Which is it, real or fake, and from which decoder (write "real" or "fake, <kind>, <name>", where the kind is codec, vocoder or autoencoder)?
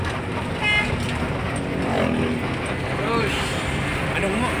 real